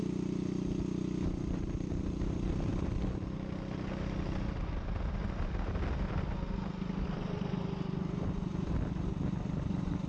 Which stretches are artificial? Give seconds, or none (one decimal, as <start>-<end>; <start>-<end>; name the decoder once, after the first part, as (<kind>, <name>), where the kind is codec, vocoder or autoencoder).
none